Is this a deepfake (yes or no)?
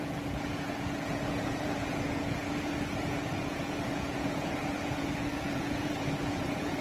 yes